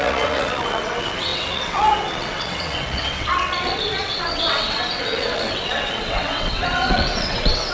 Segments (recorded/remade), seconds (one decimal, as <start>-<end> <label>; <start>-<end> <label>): 0.0-7.7 remade